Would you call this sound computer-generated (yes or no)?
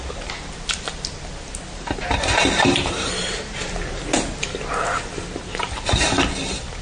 no